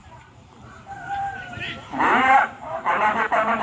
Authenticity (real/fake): fake